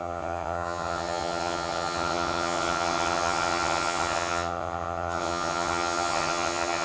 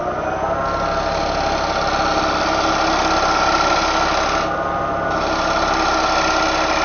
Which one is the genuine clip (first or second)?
second